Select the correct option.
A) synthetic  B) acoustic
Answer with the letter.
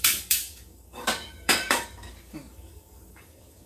A